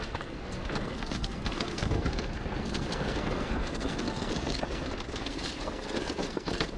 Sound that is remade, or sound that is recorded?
remade